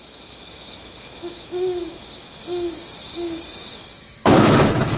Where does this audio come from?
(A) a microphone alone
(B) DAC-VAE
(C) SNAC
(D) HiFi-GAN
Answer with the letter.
B